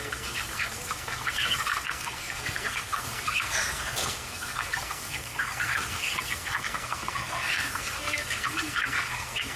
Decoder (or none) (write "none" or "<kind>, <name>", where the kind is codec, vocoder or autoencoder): codec, SNAC